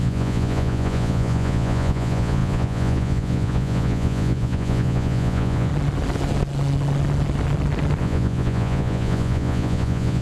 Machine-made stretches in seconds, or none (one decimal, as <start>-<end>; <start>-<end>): 0.0-5.7; 8.0-10.2